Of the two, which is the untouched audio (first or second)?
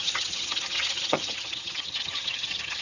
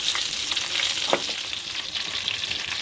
second